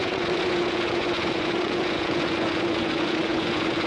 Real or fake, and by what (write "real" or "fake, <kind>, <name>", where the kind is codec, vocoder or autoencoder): fake, vocoder, Vocos